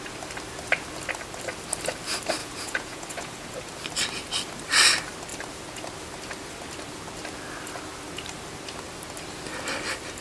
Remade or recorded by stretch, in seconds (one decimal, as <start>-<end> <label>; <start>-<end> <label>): 0.0-2.4 recorded; 2.4-3.6 remade; 3.6-10.2 recorded